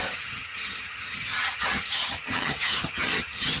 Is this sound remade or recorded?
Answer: remade